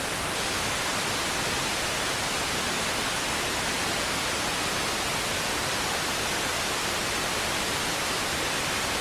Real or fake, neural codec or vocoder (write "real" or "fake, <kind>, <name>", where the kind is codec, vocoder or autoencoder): real